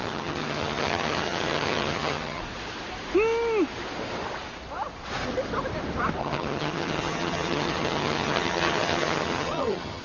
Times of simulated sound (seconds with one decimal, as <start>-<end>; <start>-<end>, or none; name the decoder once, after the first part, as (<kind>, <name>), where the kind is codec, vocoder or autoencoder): 0.0-2.4 (vocoder, HiFi-GAN); 6.2-10.0